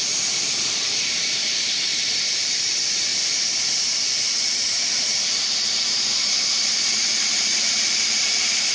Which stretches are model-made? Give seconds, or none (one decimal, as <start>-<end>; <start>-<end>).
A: 0.0-8.7